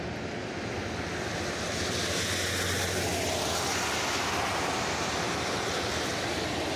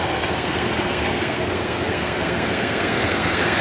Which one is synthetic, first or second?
second